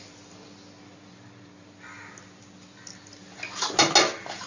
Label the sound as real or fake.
real